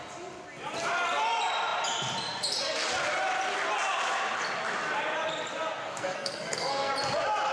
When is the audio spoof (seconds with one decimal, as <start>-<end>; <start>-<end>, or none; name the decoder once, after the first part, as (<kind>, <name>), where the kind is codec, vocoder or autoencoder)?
5.8-6.9 (codec, SNAC)

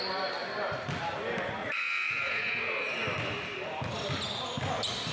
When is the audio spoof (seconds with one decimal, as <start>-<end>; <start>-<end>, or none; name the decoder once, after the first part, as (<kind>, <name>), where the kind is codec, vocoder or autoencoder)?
1.6-2.6 (vocoder, Vocos)

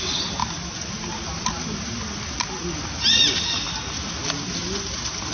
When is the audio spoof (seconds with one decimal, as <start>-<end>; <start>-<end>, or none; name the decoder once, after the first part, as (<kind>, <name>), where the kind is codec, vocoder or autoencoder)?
0.4-3.6 (vocoder, BigVGAN v2)

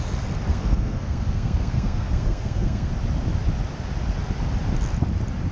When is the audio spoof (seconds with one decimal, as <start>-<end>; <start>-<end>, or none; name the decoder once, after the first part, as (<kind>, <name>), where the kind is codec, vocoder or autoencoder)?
0.5-2.9 (codec, SNAC)

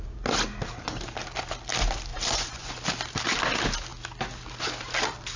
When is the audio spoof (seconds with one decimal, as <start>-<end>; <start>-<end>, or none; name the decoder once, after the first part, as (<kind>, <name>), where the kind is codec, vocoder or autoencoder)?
2.1-2.7 (vocoder, Vocos)

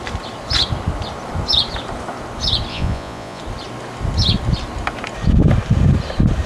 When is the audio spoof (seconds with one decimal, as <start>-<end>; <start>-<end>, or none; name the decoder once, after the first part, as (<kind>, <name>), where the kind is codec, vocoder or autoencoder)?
2.7-3.4 (vocoder, Vocos)

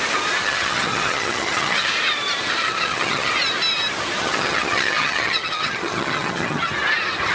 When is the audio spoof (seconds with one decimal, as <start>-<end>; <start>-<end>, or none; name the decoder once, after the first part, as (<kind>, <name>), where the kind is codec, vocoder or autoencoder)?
0.4-1.9 (vocoder, HiFi-GAN); 2.6-3.3; 4.2-6.7